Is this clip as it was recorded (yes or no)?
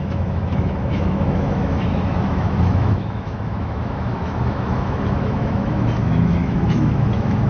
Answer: no